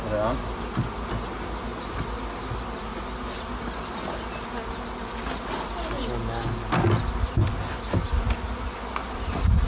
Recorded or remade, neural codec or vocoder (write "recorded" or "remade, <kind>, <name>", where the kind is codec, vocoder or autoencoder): recorded